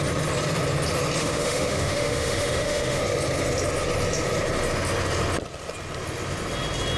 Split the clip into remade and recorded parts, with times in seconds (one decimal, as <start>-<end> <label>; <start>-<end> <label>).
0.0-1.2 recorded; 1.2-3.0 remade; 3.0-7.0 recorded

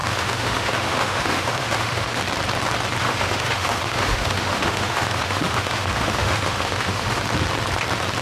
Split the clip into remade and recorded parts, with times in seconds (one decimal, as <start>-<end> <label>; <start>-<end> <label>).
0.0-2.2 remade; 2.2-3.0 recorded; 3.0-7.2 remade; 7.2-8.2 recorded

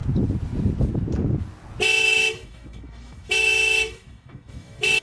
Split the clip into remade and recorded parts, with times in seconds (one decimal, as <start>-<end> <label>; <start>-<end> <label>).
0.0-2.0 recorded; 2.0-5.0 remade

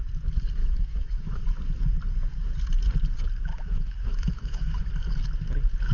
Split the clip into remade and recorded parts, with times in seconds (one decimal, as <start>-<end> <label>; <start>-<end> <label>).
0.0-0.6 recorded; 0.6-1.4 remade; 1.4-3.5 recorded; 3.5-4.8 remade; 4.8-5.9 recorded